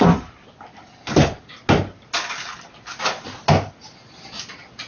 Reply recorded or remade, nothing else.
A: recorded